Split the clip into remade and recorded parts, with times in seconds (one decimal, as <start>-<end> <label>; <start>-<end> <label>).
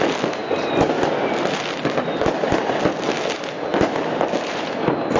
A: 0.0-3.7 recorded; 3.7-5.2 remade